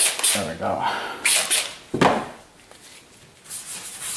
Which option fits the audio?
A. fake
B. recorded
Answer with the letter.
B